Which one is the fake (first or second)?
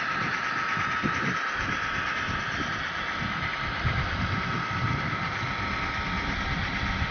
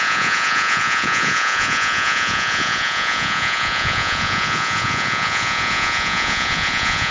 second